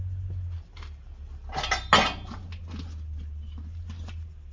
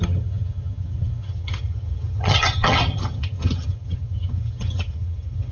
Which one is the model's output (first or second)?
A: second